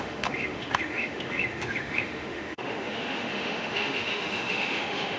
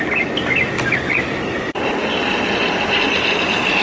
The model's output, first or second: first